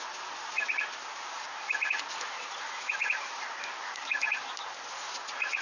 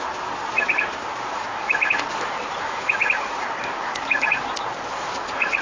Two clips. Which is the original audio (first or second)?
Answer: first